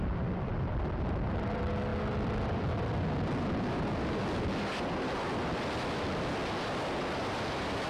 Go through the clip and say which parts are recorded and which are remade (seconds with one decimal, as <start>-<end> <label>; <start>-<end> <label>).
0.0-6.4 remade; 6.4-7.0 recorded; 7.0-7.9 remade